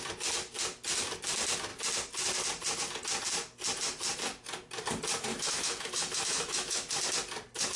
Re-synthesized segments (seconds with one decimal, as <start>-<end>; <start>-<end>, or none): 5.3-6.9